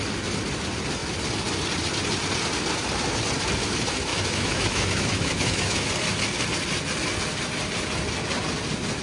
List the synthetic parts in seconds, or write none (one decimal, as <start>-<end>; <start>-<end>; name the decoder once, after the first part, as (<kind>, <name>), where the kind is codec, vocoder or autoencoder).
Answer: 4.1-5.9 (autoencoder, DAC-VAE)